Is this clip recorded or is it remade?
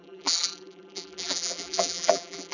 remade